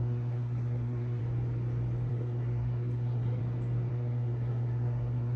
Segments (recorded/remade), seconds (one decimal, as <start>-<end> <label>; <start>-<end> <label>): 0.0-1.2 remade; 1.2-2.1 recorded; 2.1-3.4 remade; 3.4-3.9 recorded; 3.9-5.4 remade

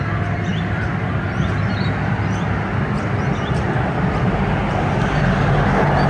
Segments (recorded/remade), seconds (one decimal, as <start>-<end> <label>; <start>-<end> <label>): 0.0-6.1 recorded